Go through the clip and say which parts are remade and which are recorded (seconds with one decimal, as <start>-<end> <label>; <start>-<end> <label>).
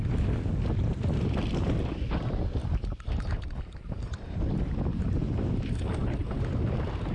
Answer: 0.0-2.6 recorded; 2.6-4.4 remade; 4.4-4.9 recorded; 4.9-5.4 remade; 5.4-7.1 recorded